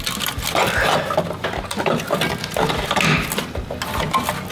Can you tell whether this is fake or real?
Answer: real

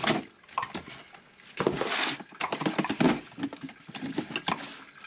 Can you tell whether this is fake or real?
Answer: real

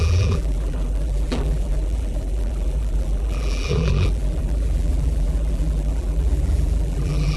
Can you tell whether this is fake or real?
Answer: fake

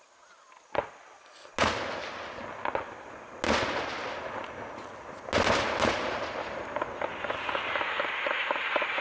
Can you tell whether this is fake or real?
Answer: real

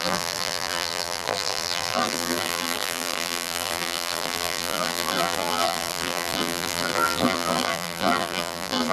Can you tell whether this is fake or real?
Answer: fake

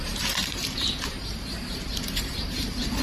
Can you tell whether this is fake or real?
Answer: fake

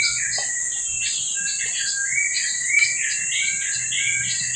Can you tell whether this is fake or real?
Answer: real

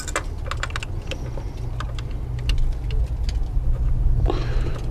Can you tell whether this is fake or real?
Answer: real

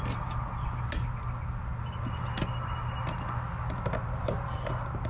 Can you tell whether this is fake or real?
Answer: real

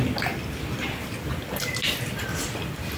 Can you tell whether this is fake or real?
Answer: real